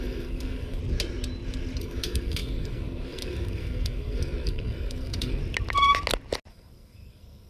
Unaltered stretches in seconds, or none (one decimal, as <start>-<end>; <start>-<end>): 0.8-1.8; 5.4-6.5